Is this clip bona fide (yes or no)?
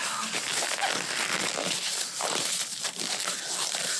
yes